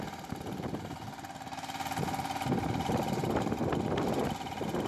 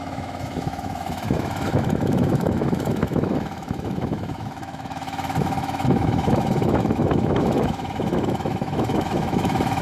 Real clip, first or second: first